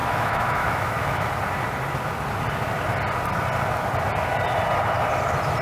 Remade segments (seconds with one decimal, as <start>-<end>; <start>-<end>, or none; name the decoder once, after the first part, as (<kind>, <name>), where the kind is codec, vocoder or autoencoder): 0.0-1.3 (autoencoder, DAC-VAE)